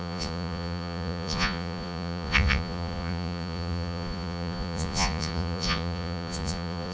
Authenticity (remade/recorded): remade